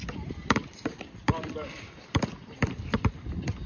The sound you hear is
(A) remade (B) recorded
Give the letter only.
B